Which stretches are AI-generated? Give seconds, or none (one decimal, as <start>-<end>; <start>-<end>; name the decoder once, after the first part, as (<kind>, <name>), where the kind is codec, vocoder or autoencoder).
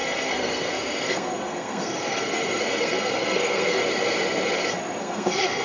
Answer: 0.0-3.8 (codec, SNAC); 5.0-5.6